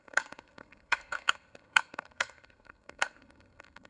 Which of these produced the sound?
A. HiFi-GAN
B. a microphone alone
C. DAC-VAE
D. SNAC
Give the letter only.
D